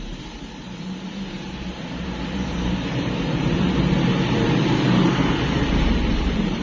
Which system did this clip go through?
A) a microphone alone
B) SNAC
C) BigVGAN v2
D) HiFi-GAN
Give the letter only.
C